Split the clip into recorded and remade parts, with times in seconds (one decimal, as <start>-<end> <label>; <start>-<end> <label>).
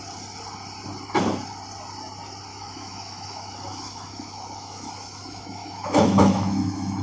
0.0-2.5 recorded; 2.5-7.0 remade